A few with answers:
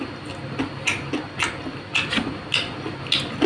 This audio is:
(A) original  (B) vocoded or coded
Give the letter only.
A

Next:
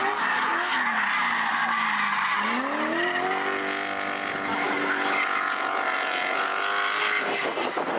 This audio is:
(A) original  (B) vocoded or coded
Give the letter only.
A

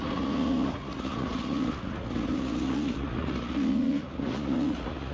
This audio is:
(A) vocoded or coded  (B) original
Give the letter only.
A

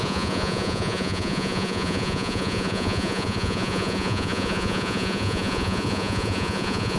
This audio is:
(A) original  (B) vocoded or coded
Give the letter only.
B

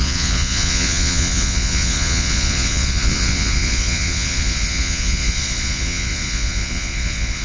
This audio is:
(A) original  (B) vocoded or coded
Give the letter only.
B